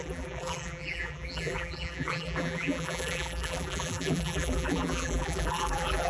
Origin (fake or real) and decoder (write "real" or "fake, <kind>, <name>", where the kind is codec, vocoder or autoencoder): fake, vocoder, BigVGAN v2